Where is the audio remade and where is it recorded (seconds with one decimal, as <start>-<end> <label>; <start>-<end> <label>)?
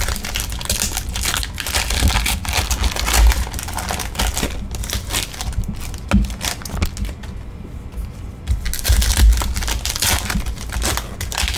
0.0-11.6 recorded